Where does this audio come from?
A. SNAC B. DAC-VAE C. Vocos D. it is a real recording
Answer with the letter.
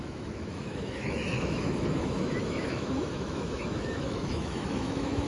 B